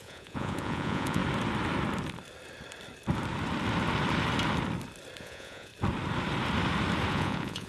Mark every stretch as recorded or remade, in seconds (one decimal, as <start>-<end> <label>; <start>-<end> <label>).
0.0-1.2 remade; 1.2-5.2 recorded; 5.2-5.7 remade; 5.7-7.1 recorded; 7.1-7.7 remade